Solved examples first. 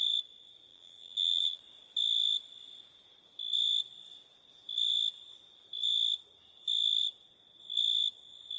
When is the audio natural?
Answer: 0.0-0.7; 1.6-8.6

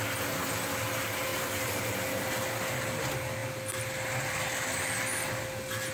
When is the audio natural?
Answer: 0.0-1.3; 1.8-5.9